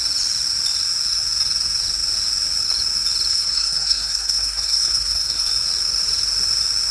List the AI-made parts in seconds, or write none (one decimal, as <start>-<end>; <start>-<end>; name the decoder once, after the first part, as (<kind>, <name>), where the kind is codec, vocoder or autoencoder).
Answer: 3.3-5.5 (codec, SNAC)